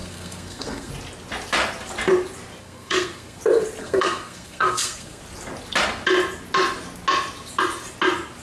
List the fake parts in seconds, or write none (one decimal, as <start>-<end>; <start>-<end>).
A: 0.0-0.9; 2.6-3.4; 3.8-5.2